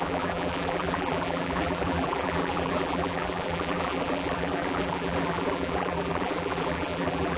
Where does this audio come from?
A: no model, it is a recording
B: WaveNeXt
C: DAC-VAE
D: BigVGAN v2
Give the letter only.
D